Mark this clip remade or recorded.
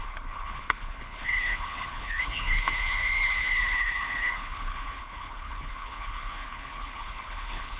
remade